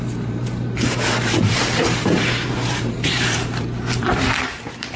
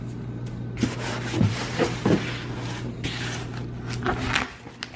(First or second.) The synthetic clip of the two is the first